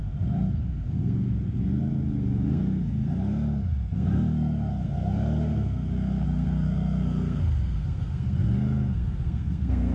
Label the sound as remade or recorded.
remade